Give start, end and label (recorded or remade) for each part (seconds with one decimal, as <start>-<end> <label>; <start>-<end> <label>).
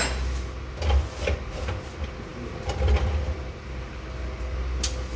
0.0-5.2 recorded